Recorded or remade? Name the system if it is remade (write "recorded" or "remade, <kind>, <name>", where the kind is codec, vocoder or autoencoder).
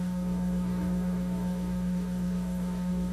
remade, codec, DAC